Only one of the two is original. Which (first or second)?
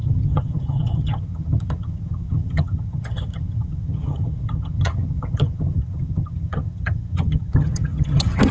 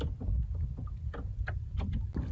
second